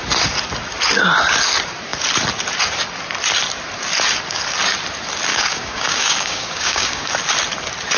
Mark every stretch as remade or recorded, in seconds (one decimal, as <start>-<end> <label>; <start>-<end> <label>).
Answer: 0.0-5.3 recorded; 5.3-7.1 remade; 7.1-8.0 recorded